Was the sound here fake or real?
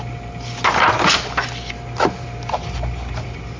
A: real